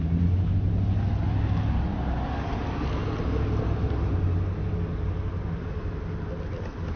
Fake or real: real